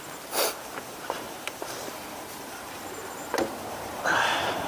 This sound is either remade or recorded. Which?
remade